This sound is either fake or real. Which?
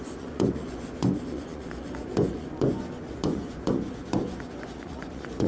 fake